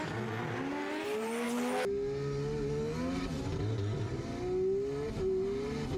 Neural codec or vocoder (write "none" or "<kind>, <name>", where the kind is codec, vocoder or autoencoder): none